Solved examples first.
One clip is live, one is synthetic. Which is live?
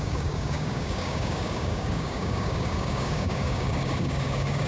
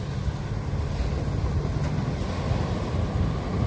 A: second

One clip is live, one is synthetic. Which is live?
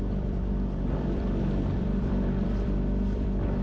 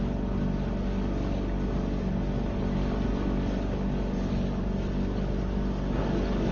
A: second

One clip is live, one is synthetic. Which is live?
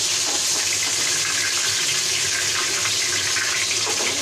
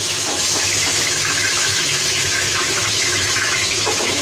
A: first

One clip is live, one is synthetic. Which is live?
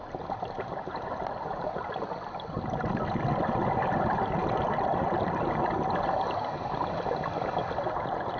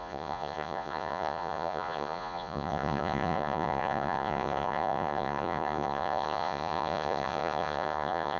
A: first